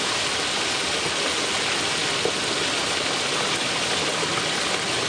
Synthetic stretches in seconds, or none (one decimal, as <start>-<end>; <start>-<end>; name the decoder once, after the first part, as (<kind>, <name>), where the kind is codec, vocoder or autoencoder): none